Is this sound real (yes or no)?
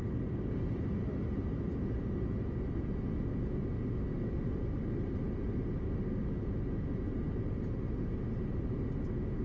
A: yes